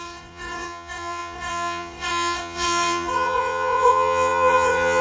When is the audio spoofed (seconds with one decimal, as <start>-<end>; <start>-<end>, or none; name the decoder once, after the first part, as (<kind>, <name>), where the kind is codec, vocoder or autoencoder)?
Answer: 0.0-5.0 (vocoder, Vocos)